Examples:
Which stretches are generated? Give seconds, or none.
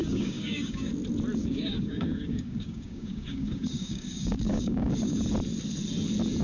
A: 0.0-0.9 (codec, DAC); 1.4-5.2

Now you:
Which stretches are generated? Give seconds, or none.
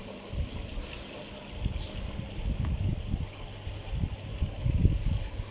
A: none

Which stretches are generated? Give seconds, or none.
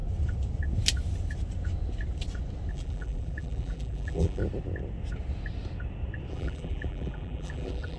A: 2.7-4.4 (vocoder, BigVGAN v2); 6.3-8.0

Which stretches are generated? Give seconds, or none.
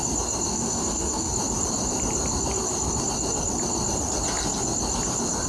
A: 0.5-1.3 (codec, SNAC)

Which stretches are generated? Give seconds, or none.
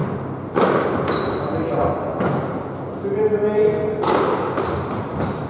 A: none